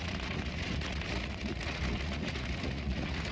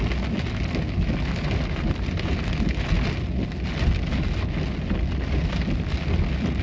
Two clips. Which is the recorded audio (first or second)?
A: second